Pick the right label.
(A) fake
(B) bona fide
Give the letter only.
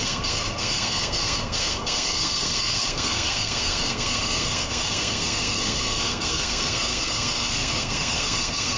A